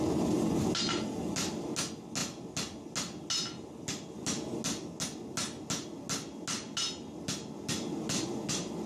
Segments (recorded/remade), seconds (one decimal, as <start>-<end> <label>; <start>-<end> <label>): 0.0-8.9 recorded